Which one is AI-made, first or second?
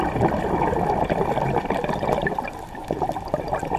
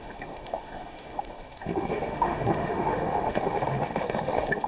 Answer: second